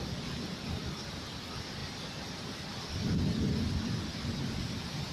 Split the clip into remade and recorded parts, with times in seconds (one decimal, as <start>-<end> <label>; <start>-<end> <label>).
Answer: 0.0-5.1 recorded

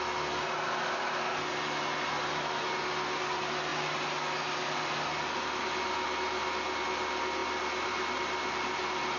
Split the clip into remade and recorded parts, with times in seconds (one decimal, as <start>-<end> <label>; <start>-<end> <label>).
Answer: 0.0-9.2 recorded